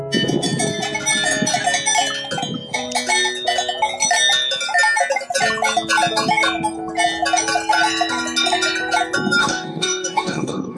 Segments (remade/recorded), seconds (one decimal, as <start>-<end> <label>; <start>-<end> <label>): 0.0-9.4 recorded; 9.4-10.8 remade

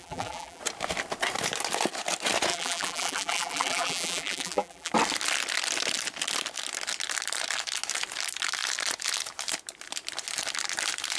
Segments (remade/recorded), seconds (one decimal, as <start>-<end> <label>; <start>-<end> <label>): 0.0-0.6 remade; 0.6-2.5 recorded; 2.5-4.9 remade; 4.9-11.2 recorded